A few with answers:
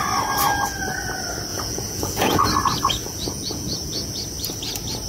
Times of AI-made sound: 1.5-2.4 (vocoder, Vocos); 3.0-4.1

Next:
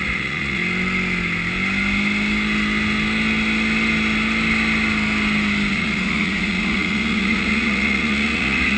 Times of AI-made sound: 0.0-0.6 (vocoder, Vocos); 5.7-8.8

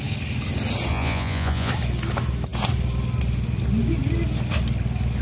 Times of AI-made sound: 0.9-1.7 (vocoder, Vocos)